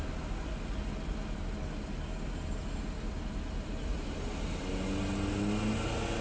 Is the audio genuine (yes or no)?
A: yes